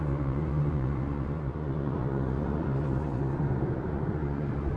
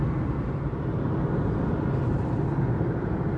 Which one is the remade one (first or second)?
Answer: first